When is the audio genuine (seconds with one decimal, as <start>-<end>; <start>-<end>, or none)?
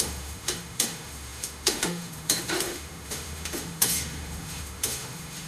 none